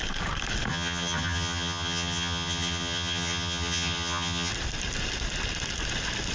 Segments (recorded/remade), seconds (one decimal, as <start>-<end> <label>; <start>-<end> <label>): 0.0-0.7 recorded; 0.7-4.5 remade; 4.5-6.3 recorded

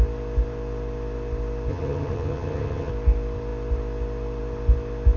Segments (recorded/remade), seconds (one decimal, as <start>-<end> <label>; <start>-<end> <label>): 0.0-1.7 recorded; 1.7-2.9 remade; 2.9-5.2 recorded

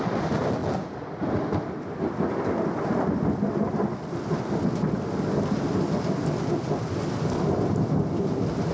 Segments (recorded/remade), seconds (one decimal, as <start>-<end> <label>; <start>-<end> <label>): 0.0-8.7 recorded

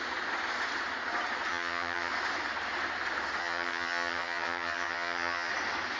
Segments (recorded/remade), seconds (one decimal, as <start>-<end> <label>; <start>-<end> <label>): 0.0-1.5 recorded; 1.5-2.1 remade; 2.1-3.4 recorded; 3.4-5.5 remade; 5.5-6.0 recorded

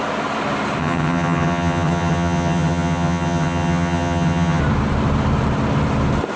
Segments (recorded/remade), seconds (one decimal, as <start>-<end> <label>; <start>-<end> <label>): 0.0-0.8 recorded; 0.8-4.6 remade; 4.6-6.4 recorded

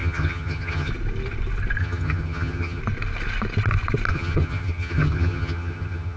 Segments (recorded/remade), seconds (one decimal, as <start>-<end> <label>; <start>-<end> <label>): 0.0-0.9 remade; 0.9-1.8 recorded; 1.8-2.8 remade; 2.8-4.1 recorded; 4.1-6.2 remade

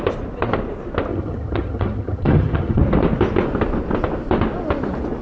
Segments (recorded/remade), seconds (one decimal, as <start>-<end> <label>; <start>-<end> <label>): 0.0-1.1 recorded; 1.1-2.8 remade; 2.8-5.2 recorded